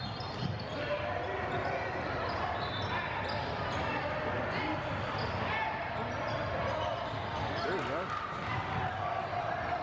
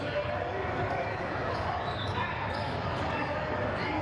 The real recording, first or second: first